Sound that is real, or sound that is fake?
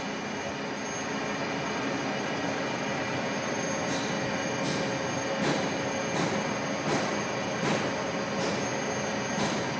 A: real